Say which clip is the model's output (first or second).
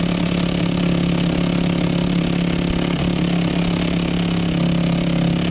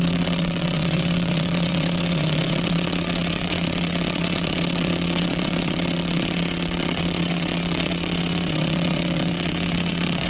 second